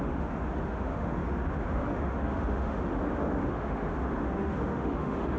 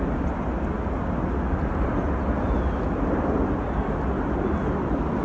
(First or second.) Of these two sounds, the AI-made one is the first